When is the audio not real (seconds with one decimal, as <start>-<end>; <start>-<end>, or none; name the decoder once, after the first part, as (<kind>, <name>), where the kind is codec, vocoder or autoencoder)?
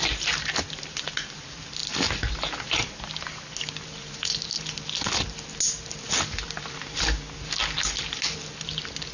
none